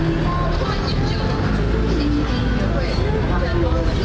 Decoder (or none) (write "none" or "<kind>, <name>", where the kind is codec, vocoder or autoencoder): none